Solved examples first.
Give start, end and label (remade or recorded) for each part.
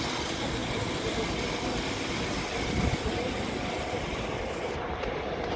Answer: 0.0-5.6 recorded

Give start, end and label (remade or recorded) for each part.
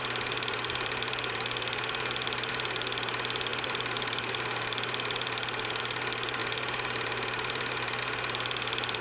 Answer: 0.0-9.0 remade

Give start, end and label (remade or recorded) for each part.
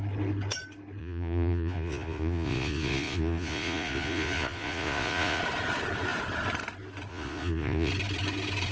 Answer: 0.0-1.0 recorded; 1.0-5.4 remade; 5.4-7.1 recorded; 7.1-7.9 remade; 7.9-8.7 recorded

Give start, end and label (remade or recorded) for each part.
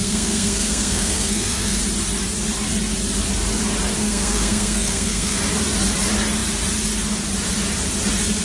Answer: 0.0-1.8 remade; 1.8-4.0 recorded; 4.0-5.4 remade; 5.4-8.4 recorded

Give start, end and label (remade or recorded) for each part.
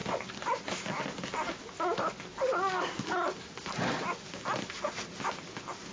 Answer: 0.0-2.3 recorded; 2.3-3.0 remade; 3.0-5.9 recorded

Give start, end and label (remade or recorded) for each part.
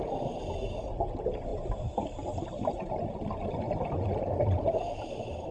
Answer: 0.0-1.5 recorded; 1.5-4.8 remade; 4.8-5.5 recorded